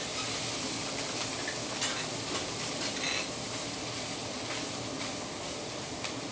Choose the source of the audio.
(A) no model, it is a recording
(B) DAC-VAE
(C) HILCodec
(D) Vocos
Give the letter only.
A